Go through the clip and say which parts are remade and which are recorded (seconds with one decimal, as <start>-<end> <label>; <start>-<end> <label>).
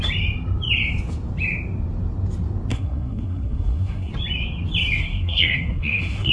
0.0-2.7 recorded; 2.7-4.1 remade; 4.1-5.0 recorded; 5.0-6.3 remade